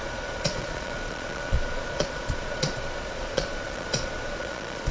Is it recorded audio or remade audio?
remade